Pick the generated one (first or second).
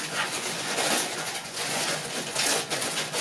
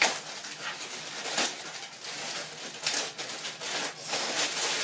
first